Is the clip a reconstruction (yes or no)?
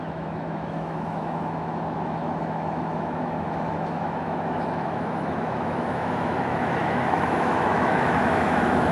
yes